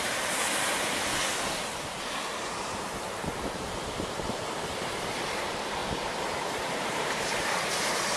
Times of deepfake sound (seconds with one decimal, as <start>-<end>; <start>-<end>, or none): 0.0-1.2; 2.3-8.2